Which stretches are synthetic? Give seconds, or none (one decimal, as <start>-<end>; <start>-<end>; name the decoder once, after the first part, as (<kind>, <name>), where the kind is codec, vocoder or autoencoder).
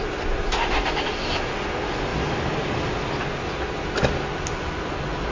none